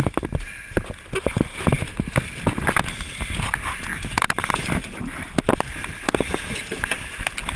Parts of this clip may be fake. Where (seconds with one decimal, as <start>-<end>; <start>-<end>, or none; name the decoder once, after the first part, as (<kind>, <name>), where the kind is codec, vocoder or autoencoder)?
none